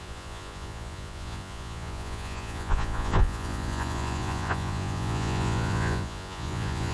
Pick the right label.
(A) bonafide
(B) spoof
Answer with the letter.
B